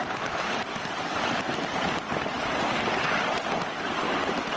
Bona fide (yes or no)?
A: yes